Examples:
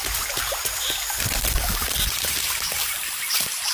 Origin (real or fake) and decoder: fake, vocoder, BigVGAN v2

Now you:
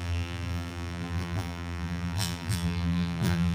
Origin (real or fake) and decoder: fake, vocoder, BigVGAN v2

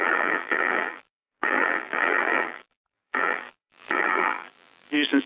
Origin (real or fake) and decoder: fake, vocoder, BigVGAN v2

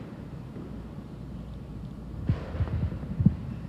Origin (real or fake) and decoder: fake, vocoder, BigVGAN v2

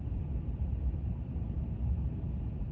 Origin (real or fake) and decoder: fake, vocoder, BigVGAN v2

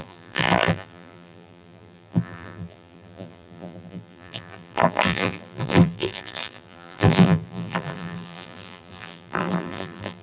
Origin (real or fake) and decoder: fake, vocoder, BigVGAN v2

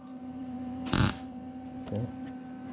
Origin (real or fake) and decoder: fake, vocoder, BigVGAN v2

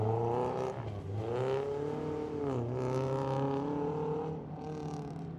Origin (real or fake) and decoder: real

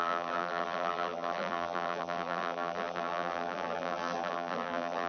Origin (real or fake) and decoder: fake, vocoder, BigVGAN v2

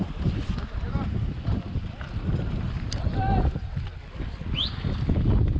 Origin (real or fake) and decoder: real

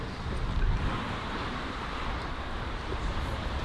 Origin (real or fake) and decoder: fake, vocoder, BigVGAN v2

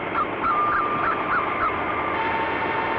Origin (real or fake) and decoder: real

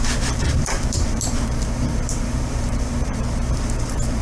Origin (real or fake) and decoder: fake, vocoder, BigVGAN v2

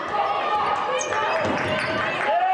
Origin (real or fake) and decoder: real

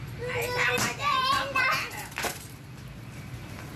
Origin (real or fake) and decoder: real